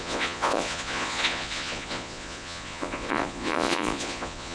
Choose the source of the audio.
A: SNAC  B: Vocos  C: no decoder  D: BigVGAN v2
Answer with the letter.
B